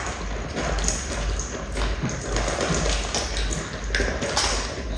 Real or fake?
real